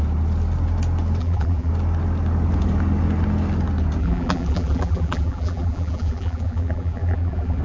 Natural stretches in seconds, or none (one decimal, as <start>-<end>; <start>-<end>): 0.0-1.2; 1.7-4.0